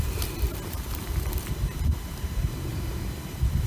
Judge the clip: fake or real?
fake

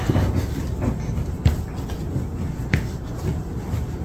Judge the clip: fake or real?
real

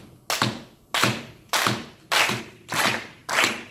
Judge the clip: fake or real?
real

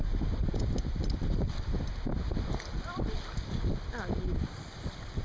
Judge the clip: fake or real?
real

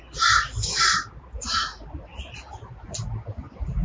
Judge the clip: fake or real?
real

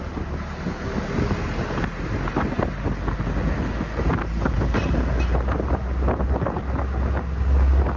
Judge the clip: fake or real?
real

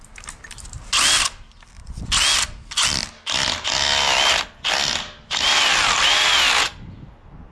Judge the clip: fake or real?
real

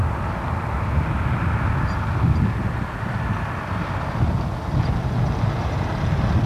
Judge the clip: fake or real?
real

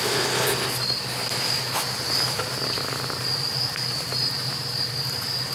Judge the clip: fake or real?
real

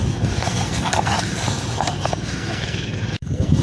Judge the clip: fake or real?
fake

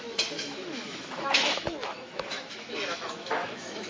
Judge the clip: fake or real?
fake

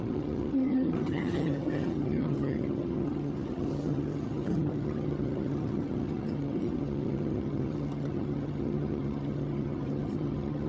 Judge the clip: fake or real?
fake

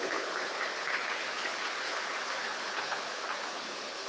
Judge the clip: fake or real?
fake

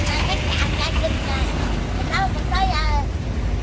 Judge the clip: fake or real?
real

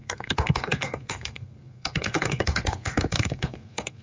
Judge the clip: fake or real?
fake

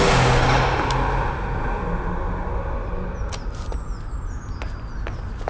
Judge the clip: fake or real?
real